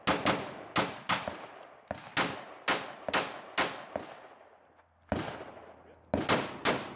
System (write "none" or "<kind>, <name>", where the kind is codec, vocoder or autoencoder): none